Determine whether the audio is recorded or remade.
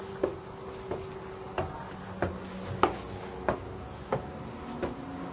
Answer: recorded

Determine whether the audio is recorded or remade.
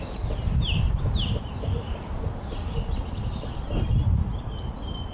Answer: recorded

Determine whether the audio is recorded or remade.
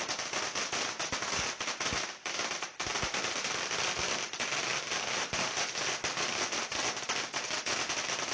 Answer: recorded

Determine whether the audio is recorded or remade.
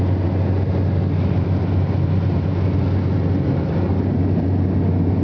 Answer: recorded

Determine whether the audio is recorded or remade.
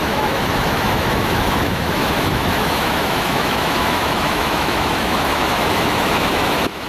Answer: remade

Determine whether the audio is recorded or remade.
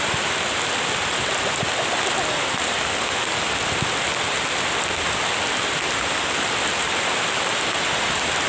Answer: recorded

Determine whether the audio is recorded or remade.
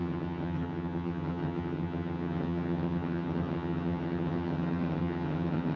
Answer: remade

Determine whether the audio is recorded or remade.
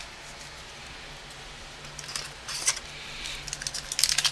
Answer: recorded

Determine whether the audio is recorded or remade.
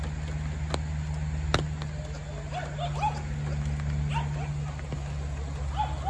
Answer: recorded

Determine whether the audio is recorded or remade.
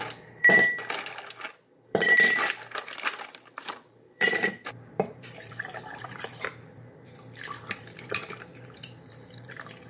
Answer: remade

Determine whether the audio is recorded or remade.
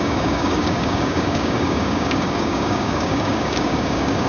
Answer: remade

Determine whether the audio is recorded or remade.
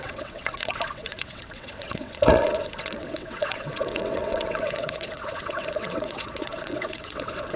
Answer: remade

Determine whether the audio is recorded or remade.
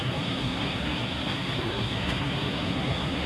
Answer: remade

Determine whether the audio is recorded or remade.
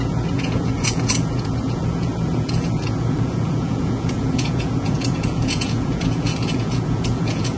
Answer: remade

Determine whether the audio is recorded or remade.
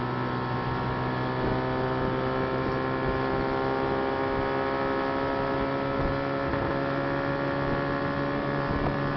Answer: recorded